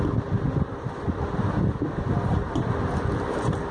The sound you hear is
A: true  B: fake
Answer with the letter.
A